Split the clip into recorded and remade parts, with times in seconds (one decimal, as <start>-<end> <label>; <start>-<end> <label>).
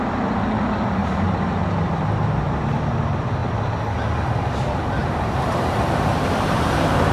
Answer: 0.0-1.0 recorded; 1.0-1.6 remade; 1.6-5.0 recorded; 5.0-7.1 remade